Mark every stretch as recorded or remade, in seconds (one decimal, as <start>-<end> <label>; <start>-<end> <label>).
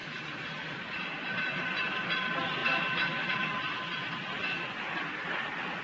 0.0-0.9 recorded; 0.9-5.8 remade